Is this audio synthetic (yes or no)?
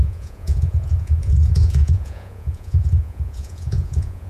yes